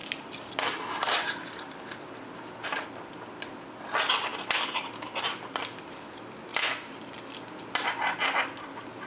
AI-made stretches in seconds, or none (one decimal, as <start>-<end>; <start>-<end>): 0.0-2.5; 4.3-6.1